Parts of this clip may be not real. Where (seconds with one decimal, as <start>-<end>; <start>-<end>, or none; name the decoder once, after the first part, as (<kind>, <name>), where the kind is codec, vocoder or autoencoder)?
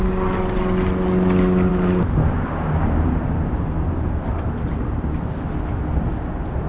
1.7-5.3 (vocoder, BigVGAN v2)